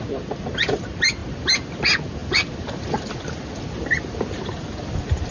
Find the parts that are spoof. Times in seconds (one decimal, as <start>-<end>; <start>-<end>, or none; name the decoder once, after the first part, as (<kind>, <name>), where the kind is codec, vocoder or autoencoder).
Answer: none